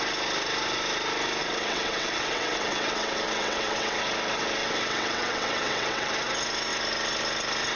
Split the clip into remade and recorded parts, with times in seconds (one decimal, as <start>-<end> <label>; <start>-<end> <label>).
0.0-1.4 recorded; 1.4-4.0 remade; 4.0-4.6 recorded; 4.6-6.1 remade; 6.1-7.8 recorded

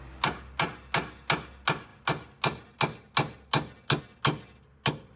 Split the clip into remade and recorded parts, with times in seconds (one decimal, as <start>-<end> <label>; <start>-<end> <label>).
0.0-5.2 recorded